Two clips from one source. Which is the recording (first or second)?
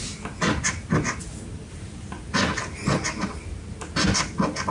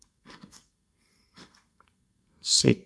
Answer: first